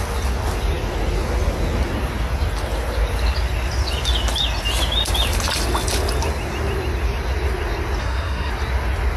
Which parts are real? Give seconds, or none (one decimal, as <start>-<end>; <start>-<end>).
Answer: 0.0-8.0; 8.5-9.2